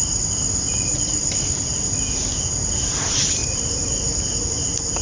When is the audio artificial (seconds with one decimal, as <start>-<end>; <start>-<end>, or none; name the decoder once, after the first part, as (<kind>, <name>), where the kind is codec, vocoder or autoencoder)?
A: none